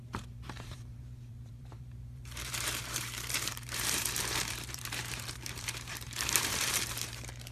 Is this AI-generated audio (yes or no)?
yes